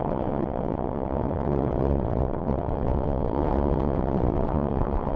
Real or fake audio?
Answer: fake